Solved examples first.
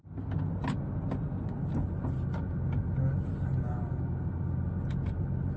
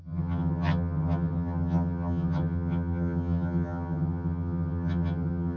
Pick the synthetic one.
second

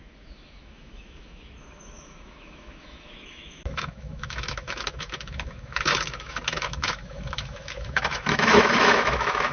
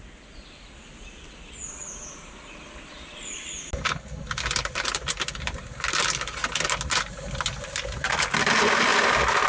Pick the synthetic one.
first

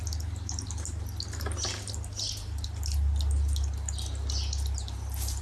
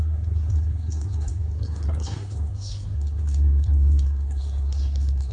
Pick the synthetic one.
second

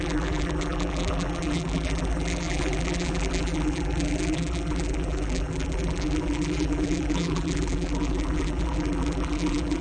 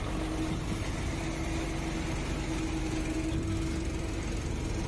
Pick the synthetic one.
first